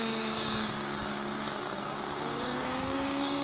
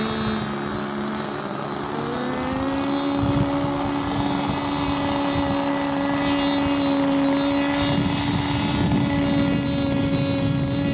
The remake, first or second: first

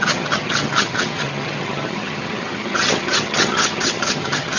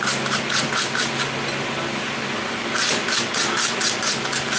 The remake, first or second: first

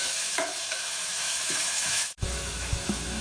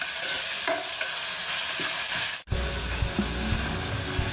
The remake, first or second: first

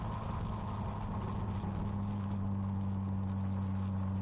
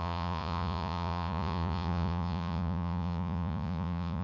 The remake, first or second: second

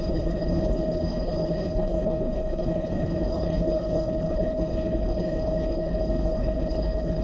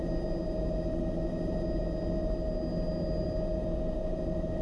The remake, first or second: first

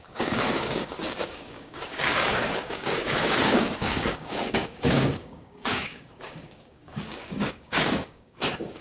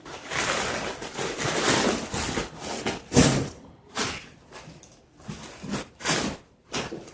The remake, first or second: first